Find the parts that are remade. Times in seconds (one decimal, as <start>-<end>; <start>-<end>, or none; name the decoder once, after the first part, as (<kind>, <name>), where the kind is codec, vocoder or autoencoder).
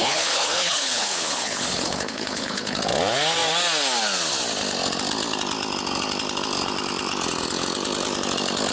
0.0-2.8 (codec, HILCodec)